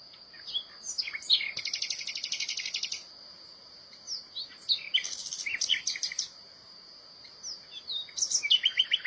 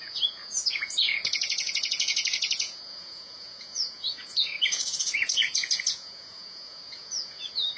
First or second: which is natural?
first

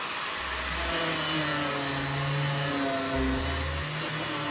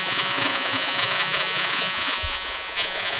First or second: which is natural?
first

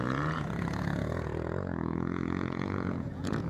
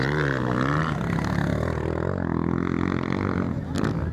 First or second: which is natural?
second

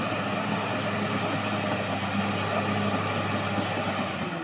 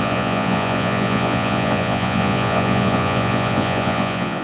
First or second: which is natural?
first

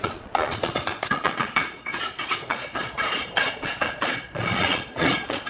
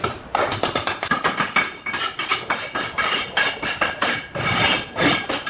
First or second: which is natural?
second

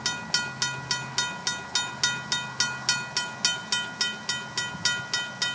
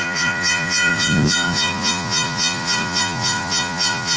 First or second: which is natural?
first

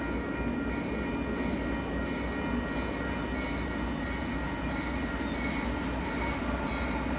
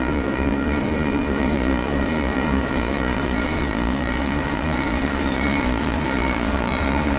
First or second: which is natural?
first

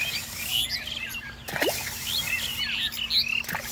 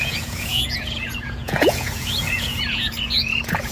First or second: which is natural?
first